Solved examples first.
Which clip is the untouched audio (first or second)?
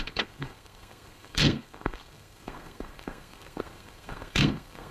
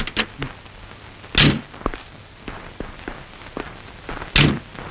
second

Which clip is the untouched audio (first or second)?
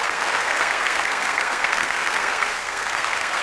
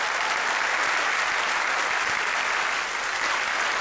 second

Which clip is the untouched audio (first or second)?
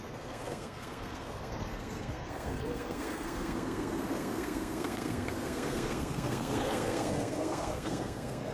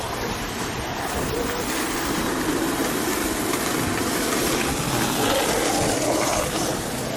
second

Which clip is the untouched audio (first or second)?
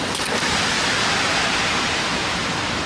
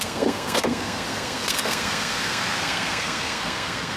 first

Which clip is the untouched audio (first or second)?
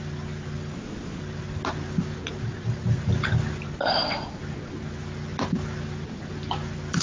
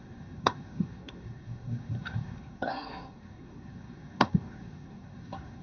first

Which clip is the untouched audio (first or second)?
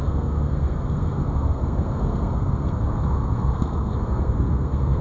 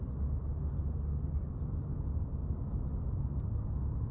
second